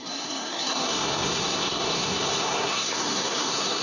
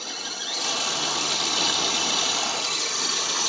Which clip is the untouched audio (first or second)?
second